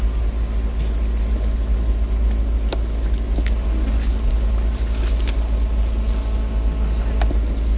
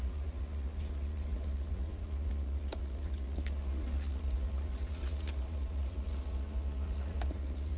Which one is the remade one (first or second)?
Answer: second